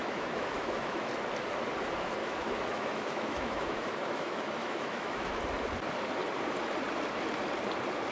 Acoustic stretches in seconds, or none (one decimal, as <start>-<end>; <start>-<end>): 1.1-2.2; 5.3-8.1